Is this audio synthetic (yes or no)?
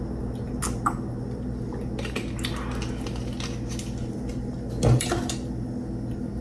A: no